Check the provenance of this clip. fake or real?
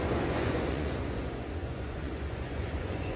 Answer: fake